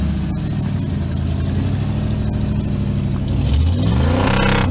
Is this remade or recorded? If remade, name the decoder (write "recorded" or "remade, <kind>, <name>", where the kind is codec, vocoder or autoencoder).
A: recorded